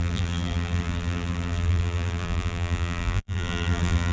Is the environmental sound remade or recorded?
remade